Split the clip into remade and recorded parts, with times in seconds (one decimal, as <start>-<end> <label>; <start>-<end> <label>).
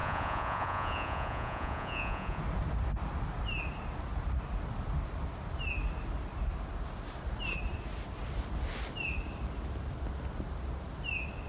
0.0-2.4 remade; 2.4-11.5 recorded